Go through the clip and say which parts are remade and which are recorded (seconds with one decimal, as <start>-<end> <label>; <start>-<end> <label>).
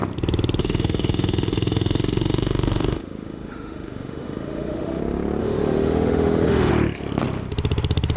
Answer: 0.0-0.6 recorded; 0.6-5.0 remade; 5.0-5.4 recorded; 5.4-6.7 remade; 6.7-8.2 recorded